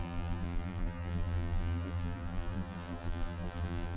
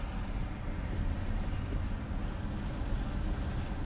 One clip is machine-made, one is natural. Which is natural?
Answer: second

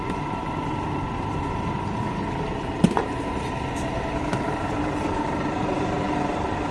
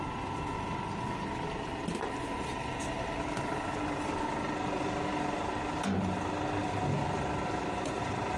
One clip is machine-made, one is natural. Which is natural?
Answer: second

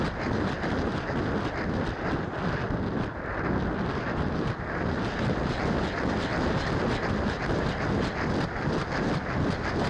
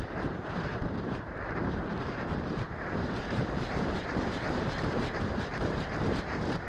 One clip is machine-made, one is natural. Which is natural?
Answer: first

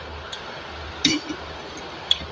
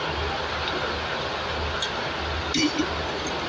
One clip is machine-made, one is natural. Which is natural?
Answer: second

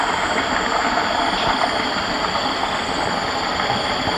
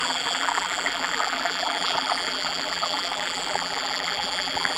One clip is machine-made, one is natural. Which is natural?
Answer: first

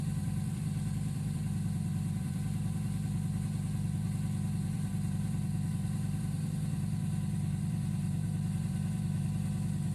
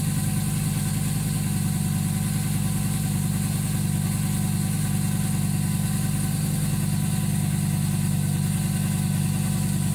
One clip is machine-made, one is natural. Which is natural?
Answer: second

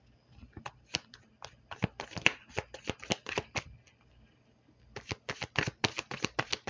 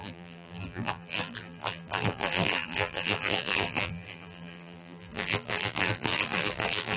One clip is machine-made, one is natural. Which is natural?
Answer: first